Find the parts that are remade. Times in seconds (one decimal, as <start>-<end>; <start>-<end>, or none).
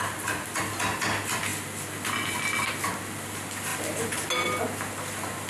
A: none